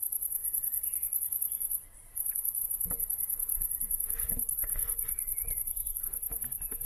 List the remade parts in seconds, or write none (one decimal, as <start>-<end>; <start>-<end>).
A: 0.4-2.6; 3.5-6.0